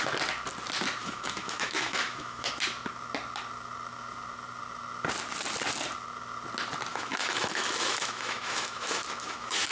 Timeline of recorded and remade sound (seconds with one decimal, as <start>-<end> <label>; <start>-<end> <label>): 0.0-1.0 recorded; 1.0-2.5 remade; 2.5-6.9 recorded; 6.9-9.7 remade